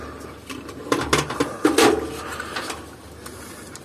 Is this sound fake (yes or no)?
no